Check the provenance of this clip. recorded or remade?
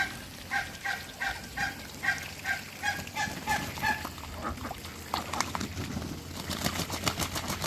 recorded